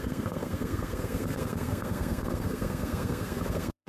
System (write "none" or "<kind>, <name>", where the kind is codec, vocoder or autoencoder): codec, SNAC